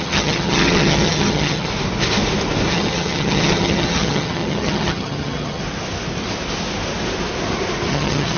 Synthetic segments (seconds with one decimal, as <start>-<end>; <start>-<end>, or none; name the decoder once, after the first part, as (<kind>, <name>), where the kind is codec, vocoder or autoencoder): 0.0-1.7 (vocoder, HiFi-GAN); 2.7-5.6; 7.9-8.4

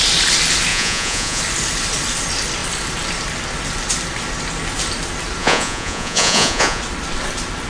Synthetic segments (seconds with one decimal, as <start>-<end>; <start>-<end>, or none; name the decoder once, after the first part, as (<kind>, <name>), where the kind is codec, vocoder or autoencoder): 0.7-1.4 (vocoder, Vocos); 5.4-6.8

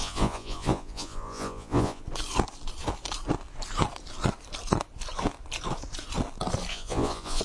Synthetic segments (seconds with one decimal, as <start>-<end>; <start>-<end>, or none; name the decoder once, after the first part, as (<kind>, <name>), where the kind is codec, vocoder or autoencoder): 0.0-2.0 (vocoder, Vocos); 6.7-7.4

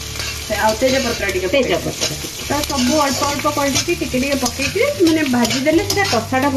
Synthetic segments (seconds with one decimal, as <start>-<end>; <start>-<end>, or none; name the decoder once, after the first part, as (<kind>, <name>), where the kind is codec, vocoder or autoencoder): none